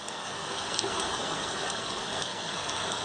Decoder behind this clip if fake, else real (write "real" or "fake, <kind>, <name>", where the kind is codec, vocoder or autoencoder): fake, codec, SNAC